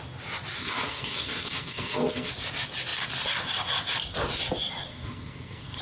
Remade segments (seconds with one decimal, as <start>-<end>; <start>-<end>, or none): 0.6-2.3; 4.9-5.8